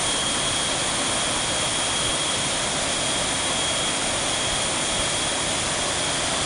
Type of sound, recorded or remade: recorded